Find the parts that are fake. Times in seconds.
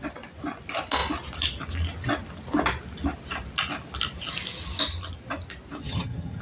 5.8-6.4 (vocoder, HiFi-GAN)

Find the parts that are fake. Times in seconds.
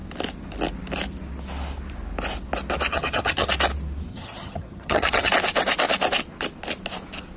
2.9-3.5 (vocoder, HiFi-GAN); 4.1-5.3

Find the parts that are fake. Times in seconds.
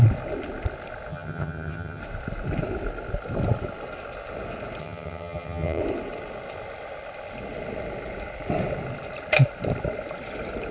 1.1-2.0 (vocoder, HiFi-GAN); 4.8-5.8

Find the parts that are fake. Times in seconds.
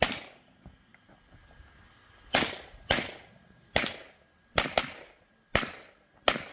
none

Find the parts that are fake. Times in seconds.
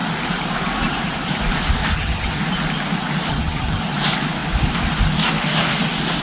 1.9-2.4 (vocoder, HiFi-GAN); 3.3-3.8